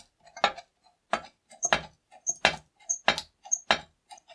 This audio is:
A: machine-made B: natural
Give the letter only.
B